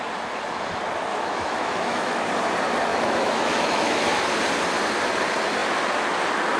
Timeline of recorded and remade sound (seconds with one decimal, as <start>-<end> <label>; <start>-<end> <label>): 0.0-1.1 recorded; 1.1-2.2 remade; 2.2-2.9 recorded; 2.9-4.2 remade; 4.2-6.6 recorded